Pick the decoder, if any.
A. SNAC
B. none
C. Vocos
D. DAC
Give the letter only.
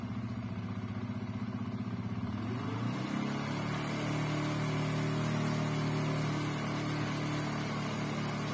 B